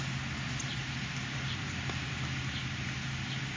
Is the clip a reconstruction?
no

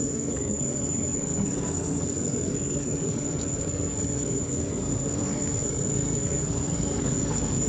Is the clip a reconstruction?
yes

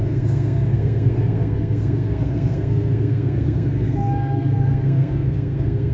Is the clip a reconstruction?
yes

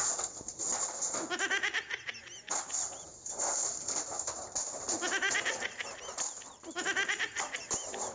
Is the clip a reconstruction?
no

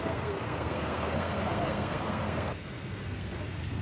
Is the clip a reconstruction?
yes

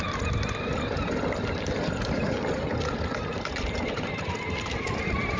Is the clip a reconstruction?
no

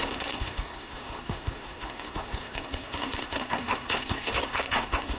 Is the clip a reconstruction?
yes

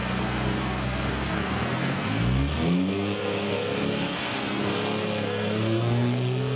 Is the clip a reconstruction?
yes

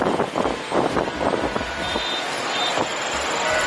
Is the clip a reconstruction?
no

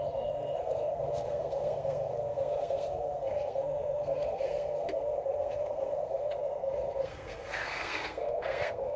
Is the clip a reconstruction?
yes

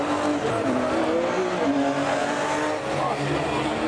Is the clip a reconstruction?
no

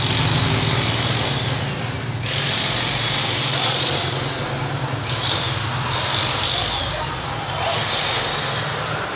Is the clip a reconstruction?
no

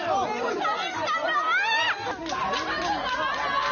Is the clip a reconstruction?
no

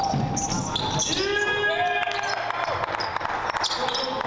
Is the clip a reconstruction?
no